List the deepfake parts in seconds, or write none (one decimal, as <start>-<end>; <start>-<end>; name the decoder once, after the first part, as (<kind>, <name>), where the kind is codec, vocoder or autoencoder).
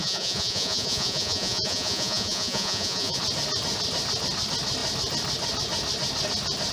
0.0-3.2 (vocoder, Vocos)